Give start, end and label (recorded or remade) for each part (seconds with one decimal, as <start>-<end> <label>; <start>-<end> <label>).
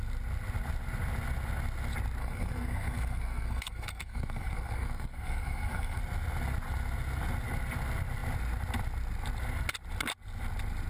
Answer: 0.0-2.2 recorded; 2.2-6.0 remade; 6.0-10.9 recorded